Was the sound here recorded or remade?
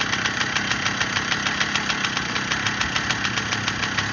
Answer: recorded